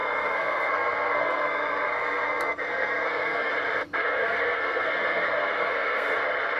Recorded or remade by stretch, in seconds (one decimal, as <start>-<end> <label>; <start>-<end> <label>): 0.0-3.5 remade; 3.5-4.0 recorded; 4.0-6.1 remade; 6.1-6.6 recorded